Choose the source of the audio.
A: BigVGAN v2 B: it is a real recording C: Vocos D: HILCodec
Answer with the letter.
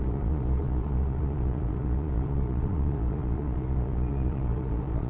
C